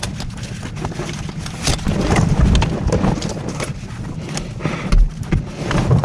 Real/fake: real